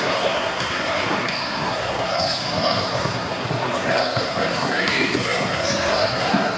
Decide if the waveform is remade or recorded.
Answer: remade